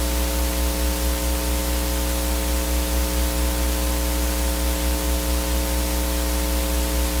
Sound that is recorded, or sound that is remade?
recorded